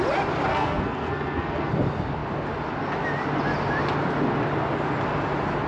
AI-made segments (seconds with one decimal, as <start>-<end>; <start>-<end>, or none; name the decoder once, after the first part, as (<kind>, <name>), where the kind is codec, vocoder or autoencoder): 0.5-1.7 (codec, SNAC)